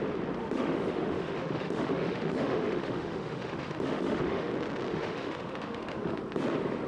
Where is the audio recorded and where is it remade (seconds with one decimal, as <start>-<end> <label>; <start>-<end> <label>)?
0.0-0.4 recorded; 0.4-4.5 remade; 4.5-4.9 recorded; 4.9-6.1 remade; 6.1-6.9 recorded